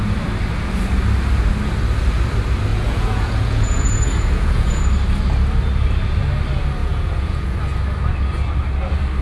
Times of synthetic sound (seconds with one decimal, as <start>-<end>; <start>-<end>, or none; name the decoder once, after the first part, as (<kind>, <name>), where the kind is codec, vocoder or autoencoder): 2.7-4.8 (vocoder, Vocos); 6.8-7.6